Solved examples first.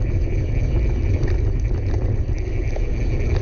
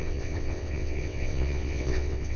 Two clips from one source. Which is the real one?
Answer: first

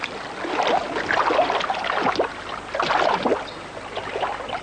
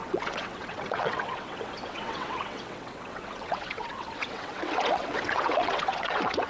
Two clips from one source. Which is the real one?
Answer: first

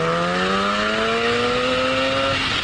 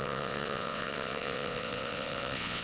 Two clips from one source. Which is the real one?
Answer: first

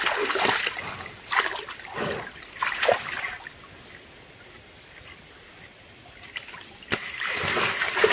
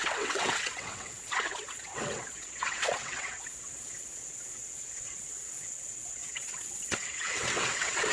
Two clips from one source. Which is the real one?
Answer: first